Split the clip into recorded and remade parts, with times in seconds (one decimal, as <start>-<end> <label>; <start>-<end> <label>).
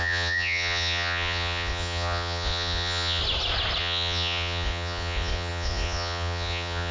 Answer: 0.0-3.2 remade; 3.2-3.8 recorded; 3.8-6.9 remade